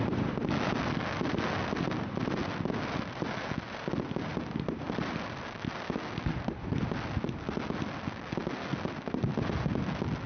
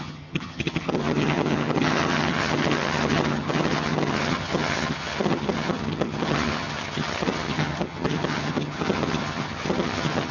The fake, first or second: second